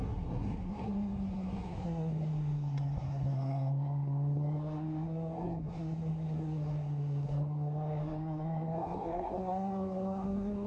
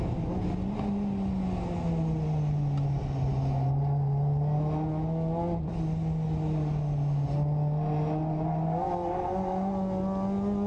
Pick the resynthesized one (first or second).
first